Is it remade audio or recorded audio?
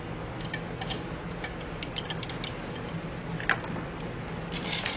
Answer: recorded